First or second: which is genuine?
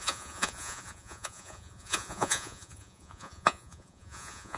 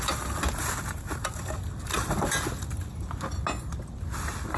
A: second